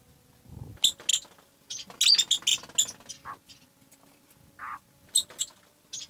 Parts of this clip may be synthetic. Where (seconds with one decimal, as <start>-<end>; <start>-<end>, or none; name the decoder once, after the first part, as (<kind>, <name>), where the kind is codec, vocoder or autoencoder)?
none